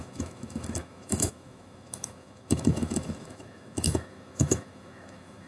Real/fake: fake